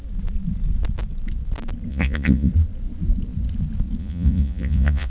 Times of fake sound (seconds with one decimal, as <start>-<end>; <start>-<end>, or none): 1.9-2.5; 4.0-5.1